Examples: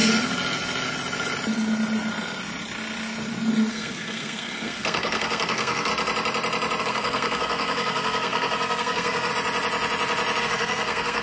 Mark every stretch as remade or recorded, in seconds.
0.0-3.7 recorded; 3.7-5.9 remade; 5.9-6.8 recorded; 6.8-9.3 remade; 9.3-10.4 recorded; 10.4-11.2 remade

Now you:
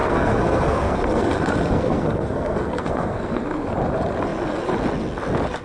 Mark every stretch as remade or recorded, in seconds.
0.0-3.4 remade; 3.4-5.6 recorded

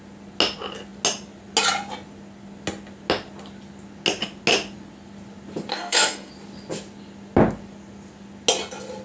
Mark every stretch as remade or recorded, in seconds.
0.0-5.7 recorded; 5.7-6.3 remade; 6.3-9.0 recorded

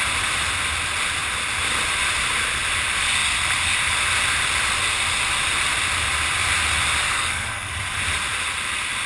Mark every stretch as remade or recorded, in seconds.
0.0-7.0 recorded; 7.0-7.7 remade; 7.7-9.1 recorded

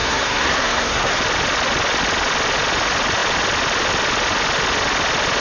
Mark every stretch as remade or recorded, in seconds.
0.0-1.2 remade; 1.2-5.4 recorded

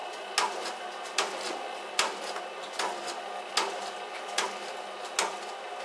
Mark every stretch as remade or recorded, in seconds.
0.0-5.8 recorded

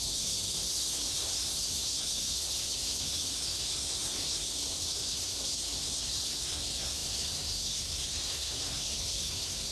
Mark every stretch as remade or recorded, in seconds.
0.0-9.7 remade

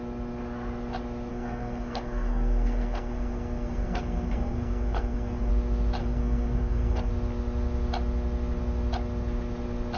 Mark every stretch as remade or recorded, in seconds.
0.0-1.3 recorded; 1.3-5.5 remade; 5.5-6.0 recorded; 6.0-7.1 remade; 7.1-10.0 recorded